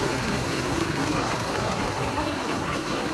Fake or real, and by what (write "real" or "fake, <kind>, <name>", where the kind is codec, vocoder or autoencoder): fake, codec, SNAC